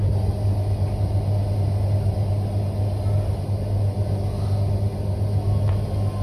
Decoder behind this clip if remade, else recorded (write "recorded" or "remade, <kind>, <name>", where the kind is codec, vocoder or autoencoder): recorded